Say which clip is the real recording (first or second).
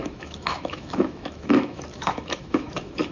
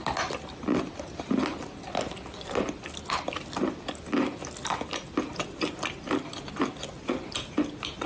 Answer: second